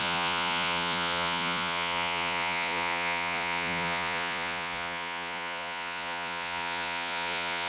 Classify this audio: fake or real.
fake